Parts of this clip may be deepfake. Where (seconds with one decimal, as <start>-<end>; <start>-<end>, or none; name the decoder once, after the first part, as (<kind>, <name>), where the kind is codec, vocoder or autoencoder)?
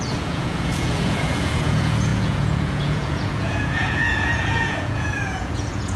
0.0-6.0 (vocoder, Vocos)